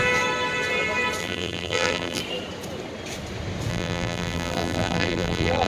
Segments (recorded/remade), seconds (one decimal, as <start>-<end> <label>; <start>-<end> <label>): 0.0-1.2 recorded; 1.2-2.2 remade; 2.2-3.7 recorded; 3.7-5.7 remade